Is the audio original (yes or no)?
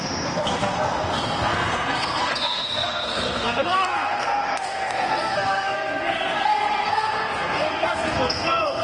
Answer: no